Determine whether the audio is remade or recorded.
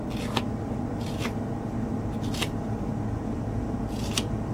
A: recorded